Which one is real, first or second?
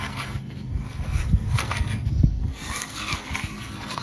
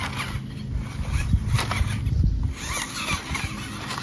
second